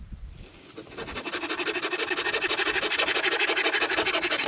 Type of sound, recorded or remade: recorded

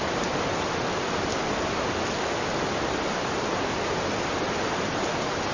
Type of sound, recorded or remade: recorded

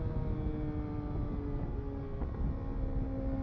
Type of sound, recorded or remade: recorded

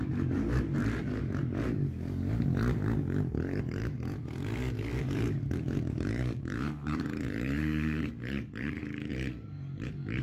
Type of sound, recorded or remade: remade